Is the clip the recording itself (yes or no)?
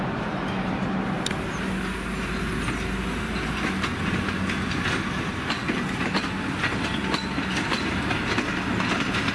yes